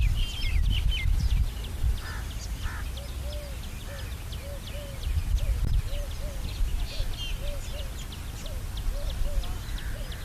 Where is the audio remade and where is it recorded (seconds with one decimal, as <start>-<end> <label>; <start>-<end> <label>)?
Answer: 0.0-10.2 recorded